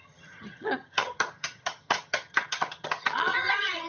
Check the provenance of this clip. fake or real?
fake